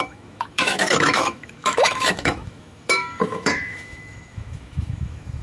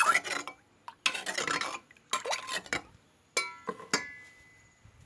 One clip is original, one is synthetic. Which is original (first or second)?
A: second